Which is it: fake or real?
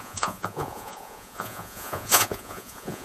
fake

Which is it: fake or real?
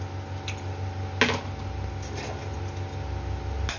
real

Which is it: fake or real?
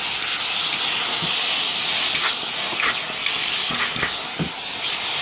real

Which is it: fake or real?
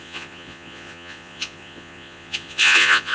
fake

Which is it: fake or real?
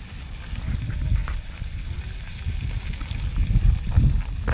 real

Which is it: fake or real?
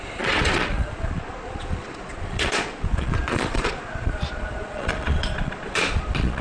fake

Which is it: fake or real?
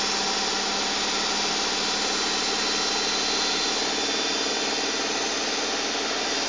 real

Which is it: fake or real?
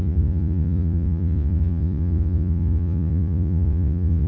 fake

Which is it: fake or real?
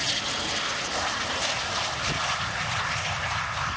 real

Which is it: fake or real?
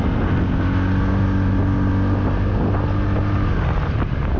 real